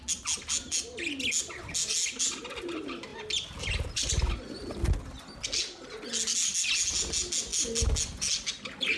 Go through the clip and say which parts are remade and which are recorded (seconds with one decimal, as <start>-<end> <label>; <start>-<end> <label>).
0.0-9.0 recorded